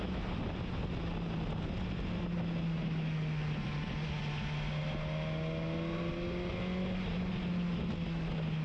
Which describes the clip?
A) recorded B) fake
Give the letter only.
A